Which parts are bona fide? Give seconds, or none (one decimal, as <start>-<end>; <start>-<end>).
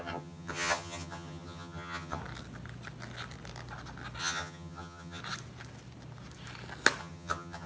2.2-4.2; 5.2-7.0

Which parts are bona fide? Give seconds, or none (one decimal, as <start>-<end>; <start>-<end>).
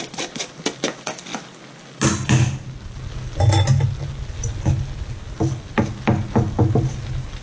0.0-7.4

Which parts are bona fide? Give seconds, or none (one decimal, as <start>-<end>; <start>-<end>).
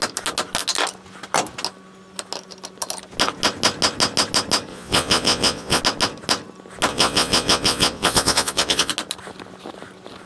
0.0-4.7; 5.8-6.9; 8.9-10.3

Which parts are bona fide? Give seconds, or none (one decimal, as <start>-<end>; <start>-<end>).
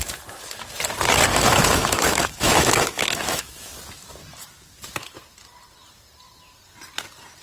0.0-1.3; 3.7-7.4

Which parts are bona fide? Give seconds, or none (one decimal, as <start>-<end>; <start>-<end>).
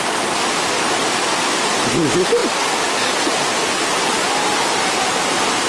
1.0-1.6; 2.4-3.8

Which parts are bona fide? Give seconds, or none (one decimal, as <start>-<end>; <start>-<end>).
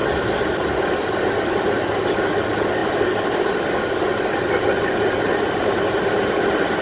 0.0-6.8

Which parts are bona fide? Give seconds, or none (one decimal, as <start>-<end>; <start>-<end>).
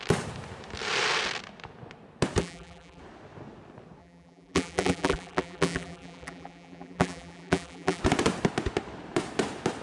0.0-2.4; 3.0-4.0; 8.0-9.8